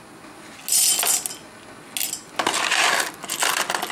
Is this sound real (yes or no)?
yes